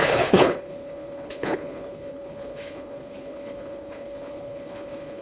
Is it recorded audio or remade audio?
remade